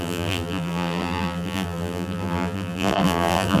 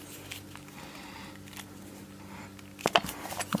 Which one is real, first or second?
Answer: second